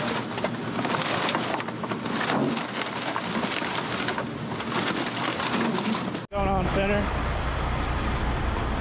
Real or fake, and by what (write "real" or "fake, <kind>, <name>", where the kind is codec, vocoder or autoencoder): real